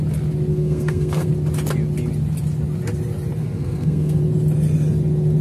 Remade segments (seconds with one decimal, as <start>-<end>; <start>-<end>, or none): 0.5-1.3; 3.4-4.2